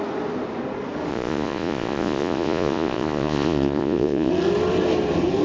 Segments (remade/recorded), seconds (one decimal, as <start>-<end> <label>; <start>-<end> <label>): 0.0-1.1 recorded; 1.1-4.3 remade; 4.3-5.4 recorded